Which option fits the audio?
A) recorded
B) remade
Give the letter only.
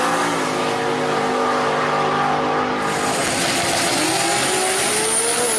A